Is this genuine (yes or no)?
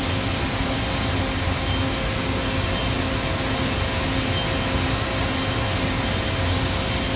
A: yes